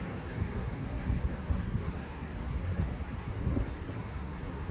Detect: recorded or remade remade